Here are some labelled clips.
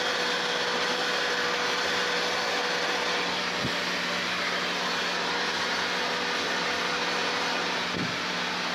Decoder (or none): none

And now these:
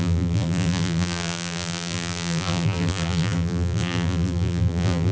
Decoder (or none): vocoder, BigVGAN v2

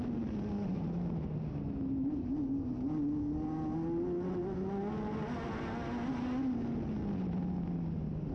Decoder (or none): none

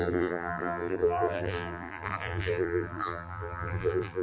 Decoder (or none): vocoder, BigVGAN v2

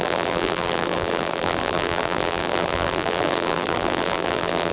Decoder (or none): vocoder, BigVGAN v2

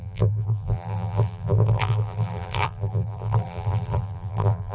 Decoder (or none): vocoder, BigVGAN v2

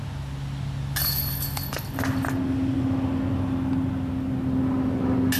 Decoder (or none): none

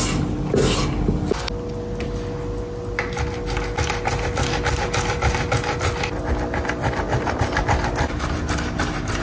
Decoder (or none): none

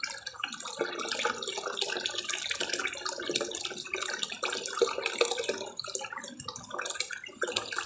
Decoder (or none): none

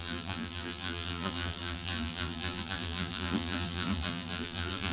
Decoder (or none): vocoder, BigVGAN v2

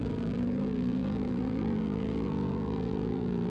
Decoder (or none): vocoder, BigVGAN v2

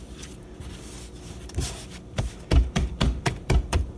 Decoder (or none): vocoder, BigVGAN v2